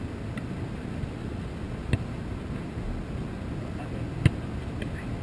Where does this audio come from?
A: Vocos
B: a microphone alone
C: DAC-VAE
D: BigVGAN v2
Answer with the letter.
B